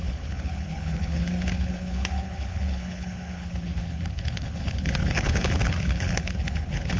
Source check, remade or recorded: remade